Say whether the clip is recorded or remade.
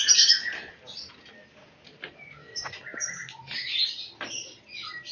recorded